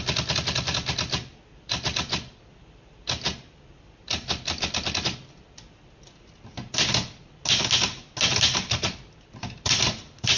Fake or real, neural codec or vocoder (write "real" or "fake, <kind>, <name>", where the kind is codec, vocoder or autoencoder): real